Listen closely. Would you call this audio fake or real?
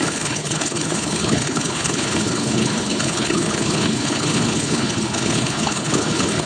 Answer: fake